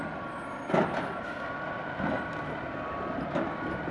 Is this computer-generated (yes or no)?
no